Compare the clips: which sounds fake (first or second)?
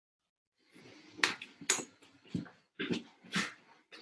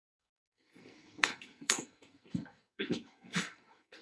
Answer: second